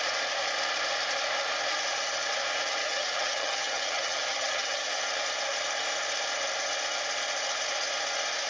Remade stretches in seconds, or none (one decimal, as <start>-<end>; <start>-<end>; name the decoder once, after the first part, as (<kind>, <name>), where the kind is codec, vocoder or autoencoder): 2.8-4.9 (vocoder, HiFi-GAN)